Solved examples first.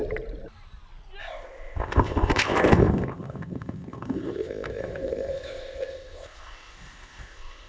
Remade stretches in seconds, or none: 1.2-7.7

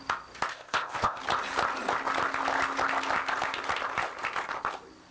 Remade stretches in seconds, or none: 0.5-1.2

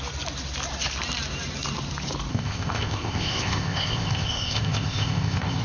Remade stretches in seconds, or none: 2.3-5.6

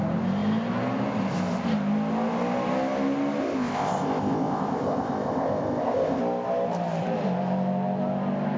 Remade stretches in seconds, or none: 3.4-6.2

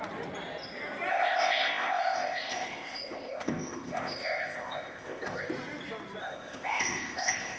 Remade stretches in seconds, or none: 1.1-5.5; 6.2-7.6

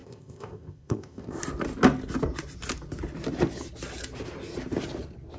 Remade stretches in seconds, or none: 0.0-1.4

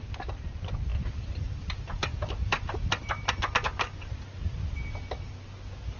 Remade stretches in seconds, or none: none

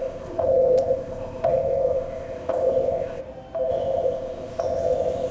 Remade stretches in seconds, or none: 0.0-3.2; 3.7-5.3